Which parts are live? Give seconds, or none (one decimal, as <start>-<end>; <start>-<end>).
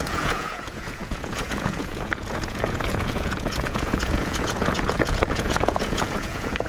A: none